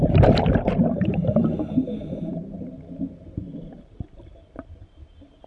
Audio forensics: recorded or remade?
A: remade